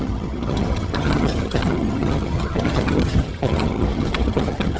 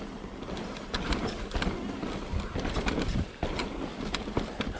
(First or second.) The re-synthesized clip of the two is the first